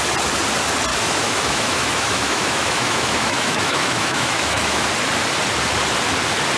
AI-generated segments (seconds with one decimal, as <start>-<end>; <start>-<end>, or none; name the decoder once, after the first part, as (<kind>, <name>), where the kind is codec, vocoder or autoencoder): 0.9-4.9 (autoencoder, DAC-VAE)